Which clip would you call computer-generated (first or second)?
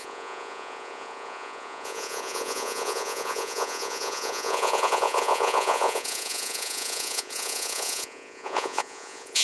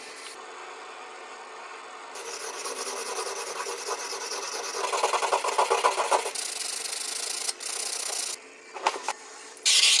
first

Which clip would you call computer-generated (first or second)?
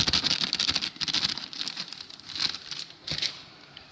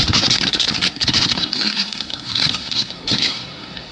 second